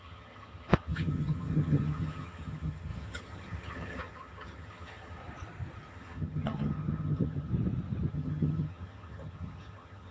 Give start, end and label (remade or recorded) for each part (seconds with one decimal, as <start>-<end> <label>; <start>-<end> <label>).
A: 0.0-5.2 remade; 5.2-5.9 recorded; 5.9-7.5 remade; 7.5-8.1 recorded; 8.1-10.1 remade